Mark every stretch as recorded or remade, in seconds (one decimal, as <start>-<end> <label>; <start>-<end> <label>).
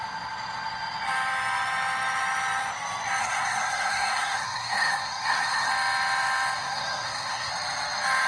0.0-3.2 recorded; 3.2-5.7 remade; 5.7-6.6 recorded; 6.6-7.5 remade; 7.5-8.3 recorded